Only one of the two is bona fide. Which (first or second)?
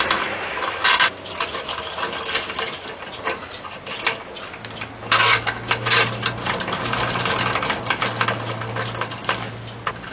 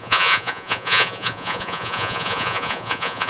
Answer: first